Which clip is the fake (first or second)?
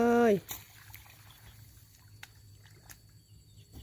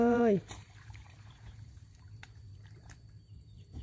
second